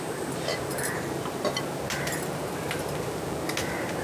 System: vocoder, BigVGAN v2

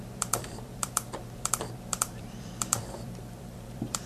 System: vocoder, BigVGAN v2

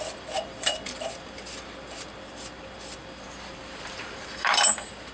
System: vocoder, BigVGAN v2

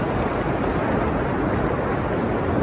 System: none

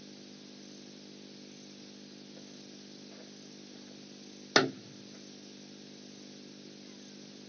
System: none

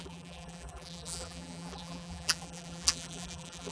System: vocoder, BigVGAN v2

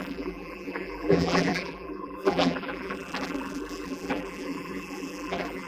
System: vocoder, BigVGAN v2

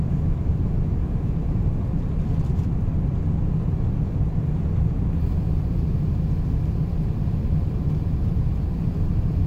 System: none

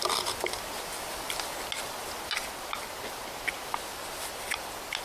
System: none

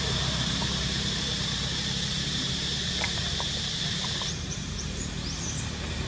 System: vocoder, BigVGAN v2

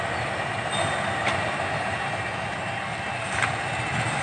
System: none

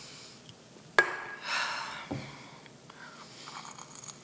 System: none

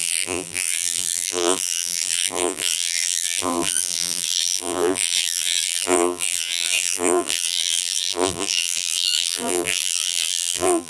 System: vocoder, BigVGAN v2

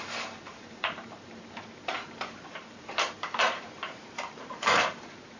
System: vocoder, BigVGAN v2